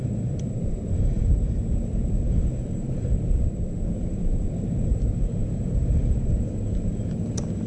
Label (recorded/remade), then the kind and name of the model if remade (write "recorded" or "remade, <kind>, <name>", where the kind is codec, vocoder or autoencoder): remade, vocoder, BigVGAN v2